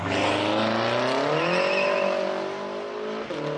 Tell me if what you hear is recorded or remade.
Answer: recorded